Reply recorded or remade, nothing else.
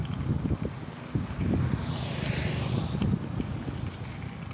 recorded